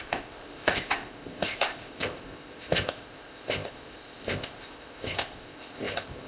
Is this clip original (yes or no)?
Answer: no